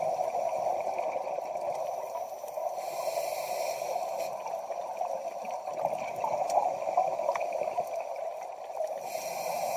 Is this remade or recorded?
recorded